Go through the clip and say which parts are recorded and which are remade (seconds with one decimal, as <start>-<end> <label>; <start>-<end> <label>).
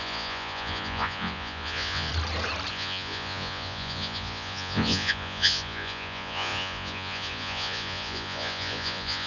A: 0.0-2.1 remade; 2.1-2.7 recorded; 2.7-9.3 remade